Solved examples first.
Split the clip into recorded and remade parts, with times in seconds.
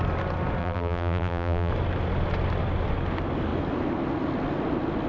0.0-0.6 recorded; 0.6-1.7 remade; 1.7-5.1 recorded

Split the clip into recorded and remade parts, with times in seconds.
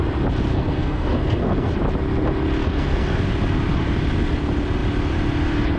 0.0-0.5 recorded; 0.5-1.7 remade; 1.7-2.6 recorded; 2.6-3.2 remade; 3.2-5.8 recorded